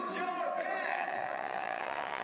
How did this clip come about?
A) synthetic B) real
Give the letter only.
A